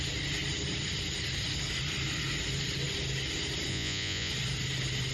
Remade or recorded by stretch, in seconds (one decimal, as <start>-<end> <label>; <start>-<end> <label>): 0.0-3.7 recorded; 3.7-4.3 remade; 4.3-5.1 recorded